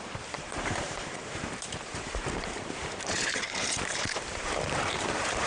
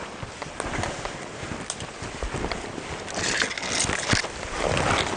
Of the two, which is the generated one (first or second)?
first